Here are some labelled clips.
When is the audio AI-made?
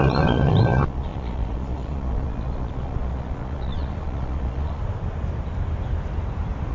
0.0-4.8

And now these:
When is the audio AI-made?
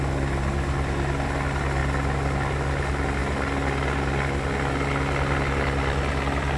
none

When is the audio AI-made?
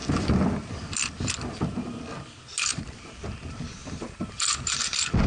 2.7-3.2; 3.8-4.8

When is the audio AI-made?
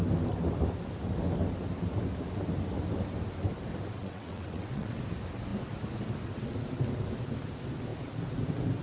4.0-5.0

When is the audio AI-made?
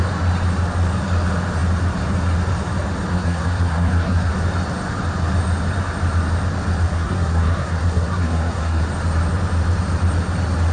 3.1-4.3; 6.9-8.8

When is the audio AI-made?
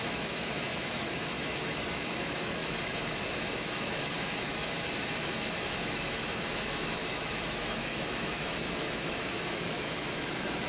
0.0-10.7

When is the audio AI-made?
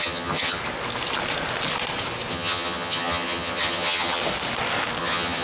0.0-0.6; 2.3-4.2; 5.0-5.4